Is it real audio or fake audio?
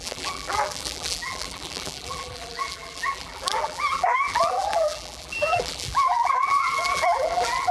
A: fake